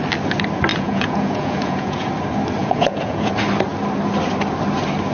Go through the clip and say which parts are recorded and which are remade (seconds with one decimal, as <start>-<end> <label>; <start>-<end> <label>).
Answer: 0.0-0.7 recorded; 0.7-2.1 remade; 2.1-2.6 recorded; 2.6-3.3 remade; 3.3-5.1 recorded